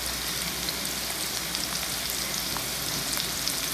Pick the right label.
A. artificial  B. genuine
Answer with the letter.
B